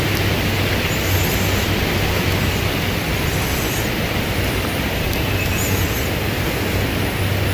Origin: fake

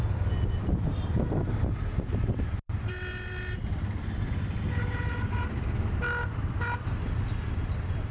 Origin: real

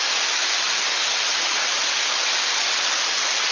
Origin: real